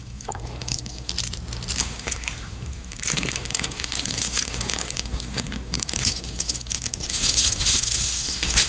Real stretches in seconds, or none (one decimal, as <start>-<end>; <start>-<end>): 1.1-1.8